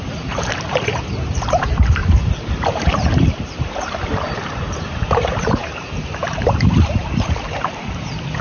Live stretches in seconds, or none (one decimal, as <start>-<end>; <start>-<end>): 2.0-2.5